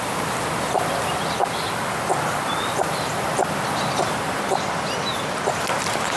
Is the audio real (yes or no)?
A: yes